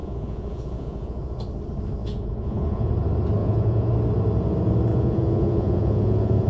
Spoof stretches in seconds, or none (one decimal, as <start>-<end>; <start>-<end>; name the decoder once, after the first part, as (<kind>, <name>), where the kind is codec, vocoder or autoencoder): 0.0-1.4 (vocoder, Vocos); 2.0-2.9; 3.4-3.9; 4.9-6.5

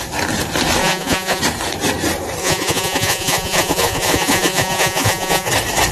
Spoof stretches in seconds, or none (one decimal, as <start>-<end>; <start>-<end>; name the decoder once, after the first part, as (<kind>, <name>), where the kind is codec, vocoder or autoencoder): 0.8-1.4 (vocoder, Vocos); 2.4-5.5